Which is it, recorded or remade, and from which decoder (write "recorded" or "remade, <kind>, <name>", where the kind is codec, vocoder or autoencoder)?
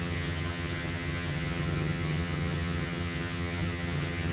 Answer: remade, vocoder, HiFi-GAN